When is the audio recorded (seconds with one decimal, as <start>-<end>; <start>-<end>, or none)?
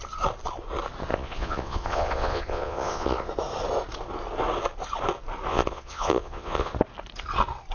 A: 0.0-1.1; 3.3-5.5; 6.7-7.7